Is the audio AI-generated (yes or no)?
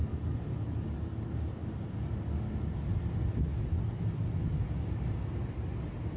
no